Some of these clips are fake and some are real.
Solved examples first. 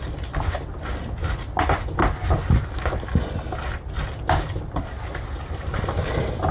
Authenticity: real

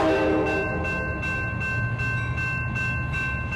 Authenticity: real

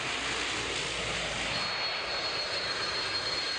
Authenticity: real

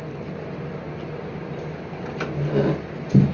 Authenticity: real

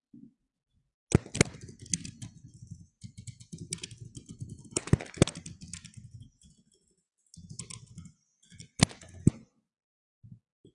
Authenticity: real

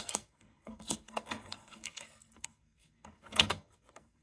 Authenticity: fake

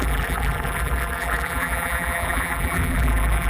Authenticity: fake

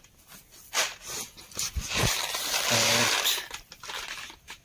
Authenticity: real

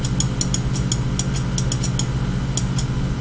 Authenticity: real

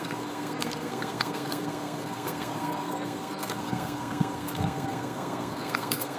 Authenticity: fake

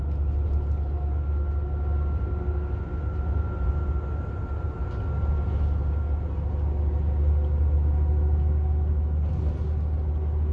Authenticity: real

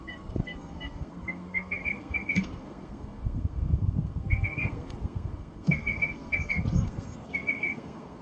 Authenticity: fake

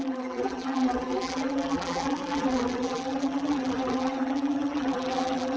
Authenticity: fake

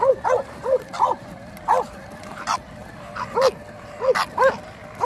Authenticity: real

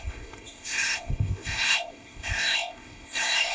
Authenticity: fake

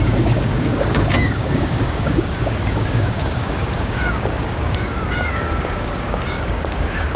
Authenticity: fake